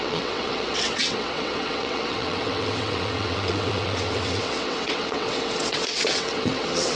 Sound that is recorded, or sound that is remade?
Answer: remade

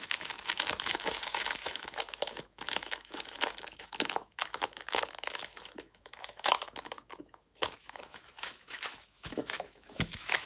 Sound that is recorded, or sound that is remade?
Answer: remade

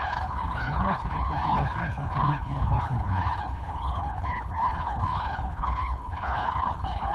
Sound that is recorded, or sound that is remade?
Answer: remade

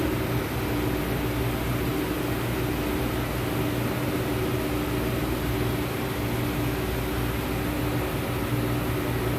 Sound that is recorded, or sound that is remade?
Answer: recorded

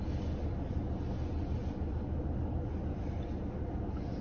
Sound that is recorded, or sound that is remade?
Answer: recorded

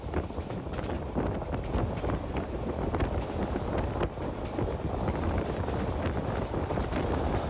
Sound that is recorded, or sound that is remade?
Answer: recorded